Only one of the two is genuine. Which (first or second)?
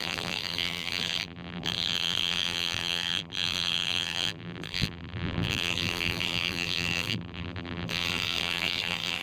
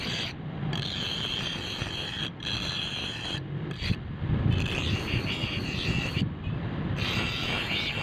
second